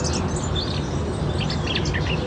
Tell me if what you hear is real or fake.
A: real